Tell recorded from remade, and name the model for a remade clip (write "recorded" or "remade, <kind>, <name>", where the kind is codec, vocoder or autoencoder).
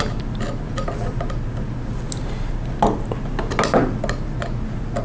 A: recorded